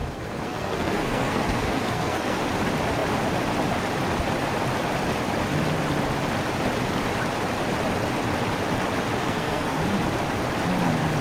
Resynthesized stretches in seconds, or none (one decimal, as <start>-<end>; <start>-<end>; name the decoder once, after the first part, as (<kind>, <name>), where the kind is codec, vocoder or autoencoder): 0.0-2.4 (codec, SNAC); 9.2-9.8